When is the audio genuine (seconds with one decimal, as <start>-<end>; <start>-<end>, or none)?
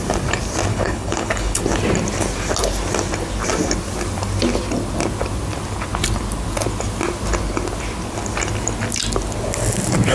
0.0-0.7; 1.6-10.1